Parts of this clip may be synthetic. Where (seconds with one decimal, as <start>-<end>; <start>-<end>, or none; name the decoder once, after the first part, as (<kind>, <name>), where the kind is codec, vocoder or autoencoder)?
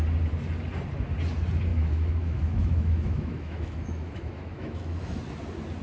1.7-5.2 (autoencoder, DAC-VAE)